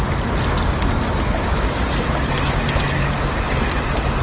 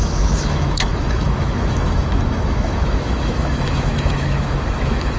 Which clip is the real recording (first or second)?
first